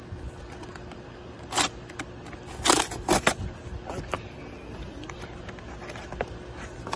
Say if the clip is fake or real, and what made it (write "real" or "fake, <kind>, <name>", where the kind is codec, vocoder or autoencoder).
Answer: real